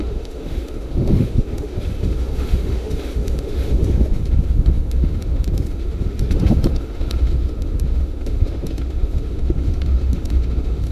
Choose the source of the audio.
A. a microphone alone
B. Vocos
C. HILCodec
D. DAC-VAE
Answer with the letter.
D